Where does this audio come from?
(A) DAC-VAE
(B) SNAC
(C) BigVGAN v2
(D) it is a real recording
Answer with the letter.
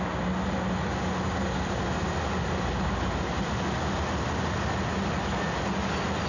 D